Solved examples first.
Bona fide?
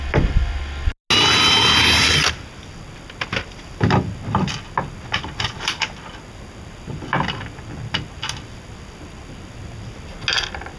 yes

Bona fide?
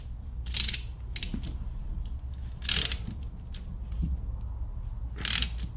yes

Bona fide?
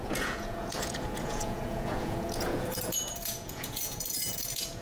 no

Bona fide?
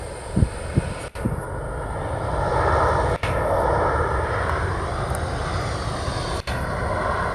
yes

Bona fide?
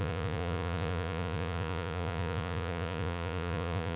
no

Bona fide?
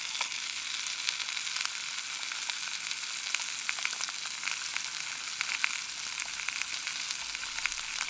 yes